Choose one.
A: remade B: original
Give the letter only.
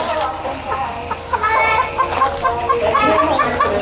B